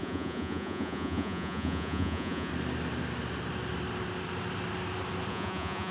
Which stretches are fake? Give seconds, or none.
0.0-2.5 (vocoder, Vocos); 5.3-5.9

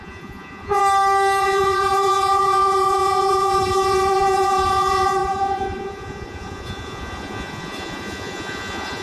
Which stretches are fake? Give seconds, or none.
0.0-0.8 (vocoder, Vocos); 1.4-9.0

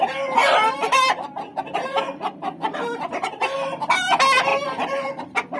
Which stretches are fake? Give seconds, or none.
0.4-3.8 (vocoder, BigVGAN v2); 4.5-5.1

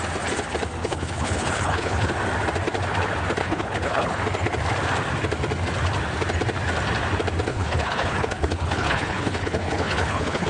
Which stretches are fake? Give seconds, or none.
0.8-2.1 (codec, HILCodec); 3.4-4.2; 7.5-10.5